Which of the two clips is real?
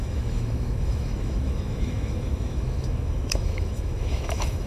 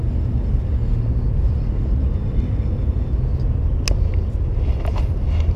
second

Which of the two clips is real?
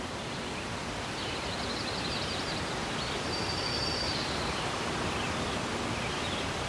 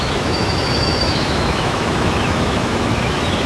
first